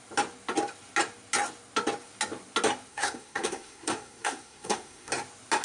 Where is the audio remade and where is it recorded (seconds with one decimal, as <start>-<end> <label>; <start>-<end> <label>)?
0.0-2.9 recorded; 2.9-5.1 remade; 5.1-5.6 recorded